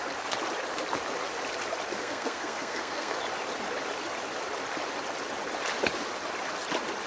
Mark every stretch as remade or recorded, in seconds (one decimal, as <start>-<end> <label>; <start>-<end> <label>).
0.0-2.0 recorded; 2.0-3.2 remade; 3.2-7.1 recorded